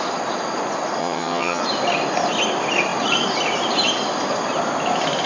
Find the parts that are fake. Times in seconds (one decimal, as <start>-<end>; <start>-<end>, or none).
1.0-1.6